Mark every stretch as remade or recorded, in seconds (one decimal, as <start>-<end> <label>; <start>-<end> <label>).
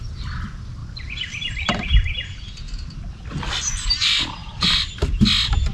0.0-0.8 recorded; 0.8-3.0 remade; 3.0-4.4 recorded; 4.4-4.9 remade; 4.9-5.7 recorded